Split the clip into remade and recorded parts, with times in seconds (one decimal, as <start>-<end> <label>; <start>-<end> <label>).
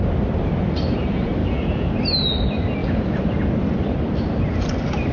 0.0-1.4 recorded; 1.4-1.9 remade; 1.9-2.8 recorded; 2.8-3.4 remade; 3.4-5.1 recorded